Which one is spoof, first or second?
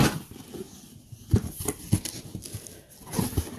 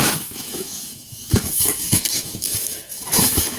second